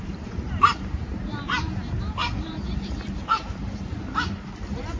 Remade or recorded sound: remade